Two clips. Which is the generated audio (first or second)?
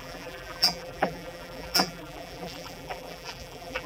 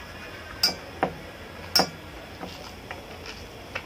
first